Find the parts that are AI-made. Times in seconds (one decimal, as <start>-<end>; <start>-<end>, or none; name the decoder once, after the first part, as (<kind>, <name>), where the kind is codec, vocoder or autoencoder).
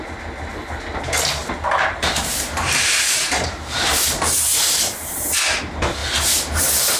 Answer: 1.4-5.6 (vocoder, BigVGAN v2)